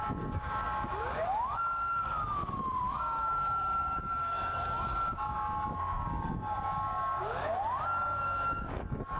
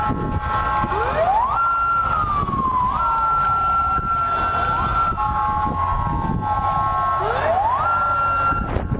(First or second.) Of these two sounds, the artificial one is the first